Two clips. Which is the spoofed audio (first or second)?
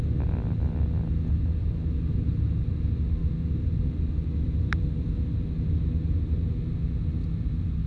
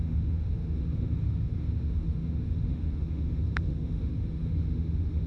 second